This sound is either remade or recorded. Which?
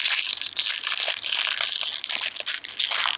recorded